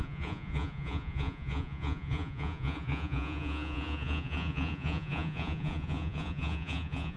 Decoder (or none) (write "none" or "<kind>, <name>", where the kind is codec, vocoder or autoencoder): vocoder, Vocos